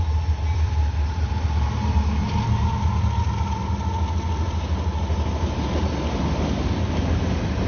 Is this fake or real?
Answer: real